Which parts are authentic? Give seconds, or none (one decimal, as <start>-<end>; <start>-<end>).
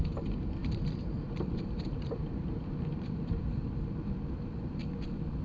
0.0-0.6; 3.8-5.4